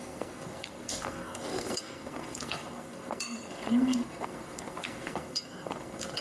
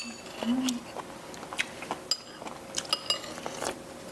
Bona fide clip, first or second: second